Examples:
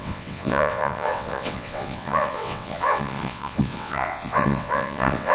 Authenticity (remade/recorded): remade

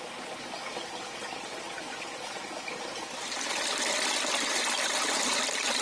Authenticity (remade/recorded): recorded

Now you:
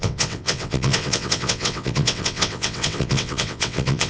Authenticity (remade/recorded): remade